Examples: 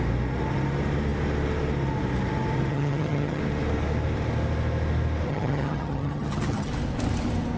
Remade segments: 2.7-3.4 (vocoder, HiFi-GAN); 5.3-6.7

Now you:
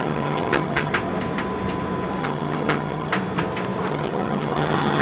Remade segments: 0.0-0.9 (vocoder, HiFi-GAN); 2.2-3.1; 3.9-5.0

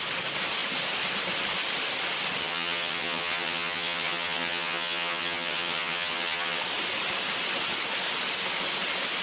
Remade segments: 2.4-6.6 (vocoder, HiFi-GAN)

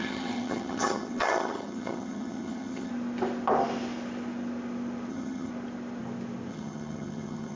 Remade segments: 0.0-2.9 (vocoder, HiFi-GAN); 5.1-5.5; 6.5-7.6

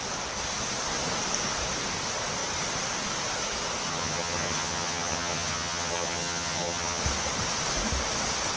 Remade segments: 3.9-7.0 (vocoder, HiFi-GAN)

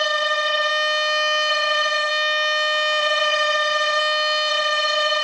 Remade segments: 0.0-0.7 (vocoder, HiFi-GAN); 1.5-2.1; 3.0-4.0; 4.5-5.2